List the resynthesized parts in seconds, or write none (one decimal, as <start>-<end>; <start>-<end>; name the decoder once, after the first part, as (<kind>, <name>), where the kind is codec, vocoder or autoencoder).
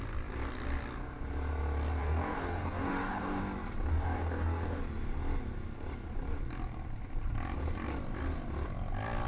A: 2.0-3.4 (codec, DAC); 3.9-4.8